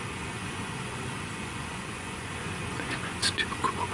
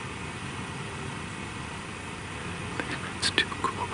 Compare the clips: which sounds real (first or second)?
second